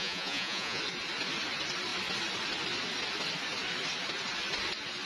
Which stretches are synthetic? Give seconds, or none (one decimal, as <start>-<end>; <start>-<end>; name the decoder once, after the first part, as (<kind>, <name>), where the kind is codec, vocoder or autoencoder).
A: 0.0-0.8 (vocoder, Vocos)